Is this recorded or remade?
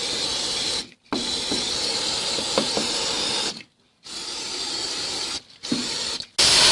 recorded